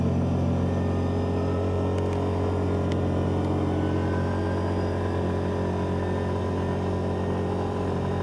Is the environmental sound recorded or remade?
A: recorded